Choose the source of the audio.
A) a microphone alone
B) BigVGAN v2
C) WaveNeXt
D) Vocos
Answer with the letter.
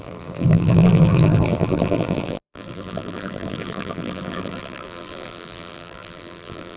B